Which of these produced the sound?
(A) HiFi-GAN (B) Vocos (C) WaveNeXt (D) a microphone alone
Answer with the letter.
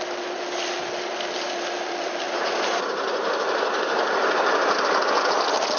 D